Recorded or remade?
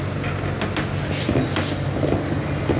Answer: recorded